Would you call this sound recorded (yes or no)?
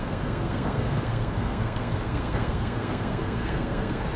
no